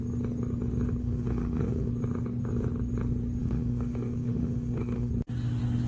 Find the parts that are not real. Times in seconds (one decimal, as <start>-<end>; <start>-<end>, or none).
1.0-1.9; 3.4-5.1